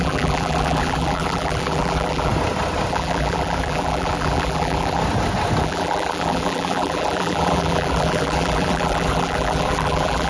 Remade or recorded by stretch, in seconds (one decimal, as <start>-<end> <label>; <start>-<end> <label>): 0.0-2.3 remade; 2.3-2.9 recorded; 2.9-5.0 remade; 5.0-5.6 recorded; 5.6-10.3 remade